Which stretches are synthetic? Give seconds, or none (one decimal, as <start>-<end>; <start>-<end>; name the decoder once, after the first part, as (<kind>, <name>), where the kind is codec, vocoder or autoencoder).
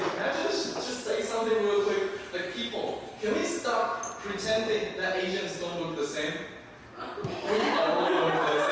none